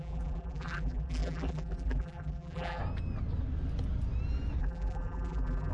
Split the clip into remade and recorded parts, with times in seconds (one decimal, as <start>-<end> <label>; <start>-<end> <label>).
0.0-2.8 remade; 2.8-4.6 recorded; 4.6-5.7 remade